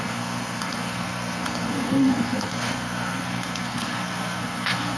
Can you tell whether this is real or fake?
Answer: fake